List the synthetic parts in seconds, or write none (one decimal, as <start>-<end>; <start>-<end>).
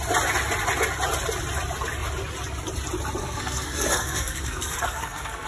3.2-5.5